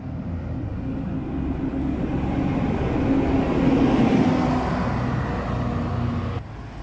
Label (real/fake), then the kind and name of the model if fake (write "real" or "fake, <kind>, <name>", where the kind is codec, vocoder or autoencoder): real